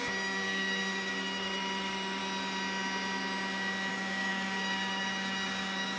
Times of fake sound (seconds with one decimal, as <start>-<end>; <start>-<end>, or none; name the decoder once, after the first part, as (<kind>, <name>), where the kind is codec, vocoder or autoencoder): 0.0-2.2 (codec, DAC); 3.9-6.0

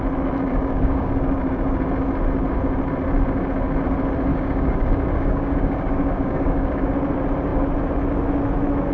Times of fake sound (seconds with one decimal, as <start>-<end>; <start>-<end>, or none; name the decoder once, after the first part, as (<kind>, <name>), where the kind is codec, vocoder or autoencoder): 0.5-1.1 (codec, DAC); 4.3-6.9

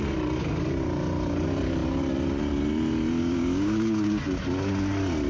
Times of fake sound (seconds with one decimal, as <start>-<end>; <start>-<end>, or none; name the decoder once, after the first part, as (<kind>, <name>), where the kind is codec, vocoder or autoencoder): 3.2-4.2 (codec, DAC)

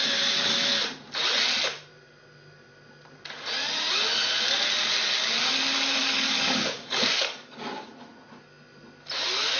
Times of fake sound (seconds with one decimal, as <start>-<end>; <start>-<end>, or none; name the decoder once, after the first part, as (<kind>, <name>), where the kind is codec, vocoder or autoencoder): 6.0-7.6 (codec, DAC)

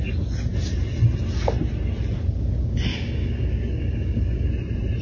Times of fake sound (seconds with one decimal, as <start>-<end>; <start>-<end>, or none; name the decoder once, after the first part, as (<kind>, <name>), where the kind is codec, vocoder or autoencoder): 2.9-4.5 (codec, DAC)

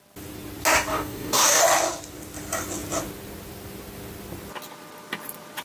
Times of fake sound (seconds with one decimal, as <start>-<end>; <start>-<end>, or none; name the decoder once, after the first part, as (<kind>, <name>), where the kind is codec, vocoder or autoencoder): 0.9-1.6 (codec, DAC)

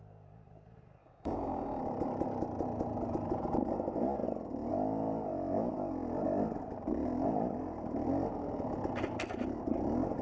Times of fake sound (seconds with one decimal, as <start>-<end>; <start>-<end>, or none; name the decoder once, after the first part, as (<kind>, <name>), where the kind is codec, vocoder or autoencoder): 1.0-1.8 (codec, DAC)